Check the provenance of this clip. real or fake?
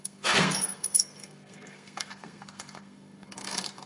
fake